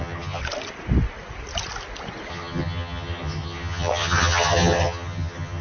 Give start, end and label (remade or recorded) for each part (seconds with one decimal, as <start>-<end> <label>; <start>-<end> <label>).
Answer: 0.0-0.4 remade; 0.4-2.3 recorded; 2.3-5.6 remade